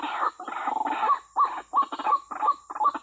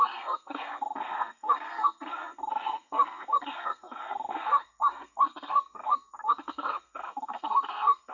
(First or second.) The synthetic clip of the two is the second